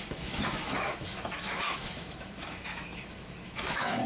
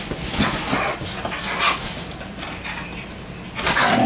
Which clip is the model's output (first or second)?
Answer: first